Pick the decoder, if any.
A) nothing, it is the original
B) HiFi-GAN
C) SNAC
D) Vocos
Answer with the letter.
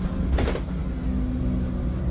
A